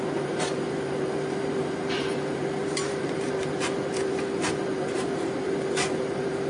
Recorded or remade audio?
remade